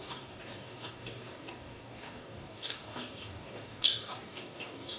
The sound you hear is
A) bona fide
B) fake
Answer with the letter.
B